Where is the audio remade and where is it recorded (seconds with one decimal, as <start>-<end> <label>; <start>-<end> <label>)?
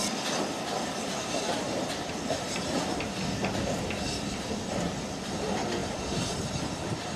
0.0-1.0 recorded; 1.0-3.1 remade; 3.1-5.8 recorded; 5.8-7.2 remade